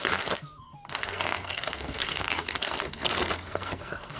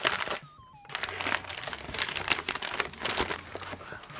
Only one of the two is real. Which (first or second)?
second